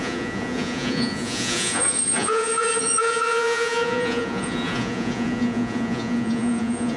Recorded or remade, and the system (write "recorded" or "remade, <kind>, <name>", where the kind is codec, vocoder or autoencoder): remade, vocoder, Vocos